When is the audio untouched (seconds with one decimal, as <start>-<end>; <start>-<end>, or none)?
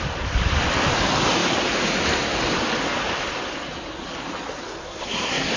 0.0-4.8